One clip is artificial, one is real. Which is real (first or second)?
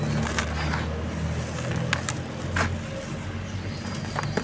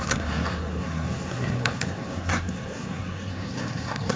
first